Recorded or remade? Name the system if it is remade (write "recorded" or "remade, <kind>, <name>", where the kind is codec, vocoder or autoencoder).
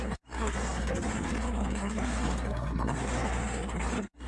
remade, codec, SNAC